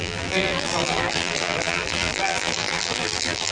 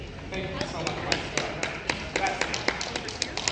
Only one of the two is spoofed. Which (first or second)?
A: first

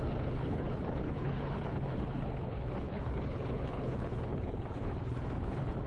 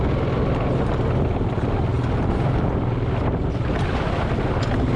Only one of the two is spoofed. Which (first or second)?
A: first